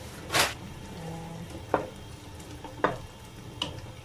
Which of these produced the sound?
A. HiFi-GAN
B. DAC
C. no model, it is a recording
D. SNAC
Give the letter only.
C